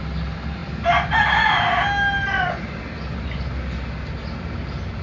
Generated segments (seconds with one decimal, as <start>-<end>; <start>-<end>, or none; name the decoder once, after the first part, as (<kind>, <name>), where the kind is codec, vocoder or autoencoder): none